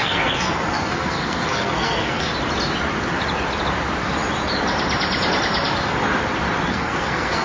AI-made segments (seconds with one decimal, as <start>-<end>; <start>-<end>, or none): 0.0-2.3; 6.7-7.4